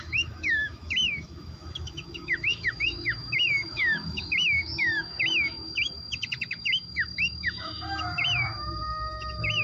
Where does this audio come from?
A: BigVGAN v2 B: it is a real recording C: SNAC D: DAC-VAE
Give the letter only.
D